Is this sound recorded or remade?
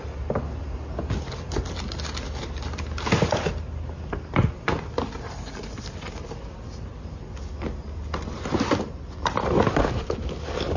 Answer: recorded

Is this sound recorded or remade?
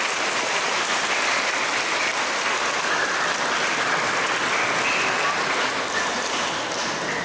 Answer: recorded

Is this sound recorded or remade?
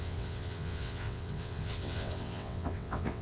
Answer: remade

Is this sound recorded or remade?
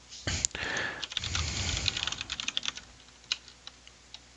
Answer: recorded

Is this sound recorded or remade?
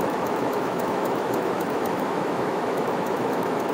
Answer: remade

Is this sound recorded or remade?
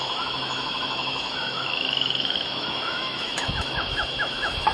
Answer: remade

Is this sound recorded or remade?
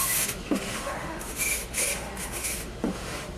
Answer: remade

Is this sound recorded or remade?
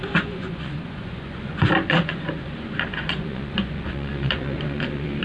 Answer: remade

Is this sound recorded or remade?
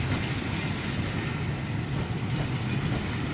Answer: recorded